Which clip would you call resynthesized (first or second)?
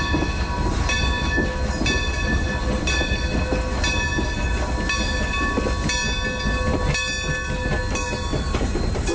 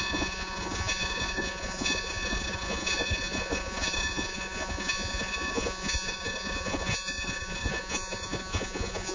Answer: second